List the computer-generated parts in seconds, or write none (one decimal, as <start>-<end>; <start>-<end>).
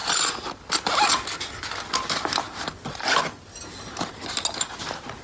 none